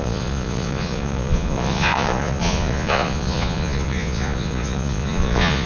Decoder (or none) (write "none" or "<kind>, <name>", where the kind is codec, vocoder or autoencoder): vocoder, Vocos